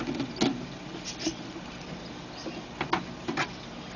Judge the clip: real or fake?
real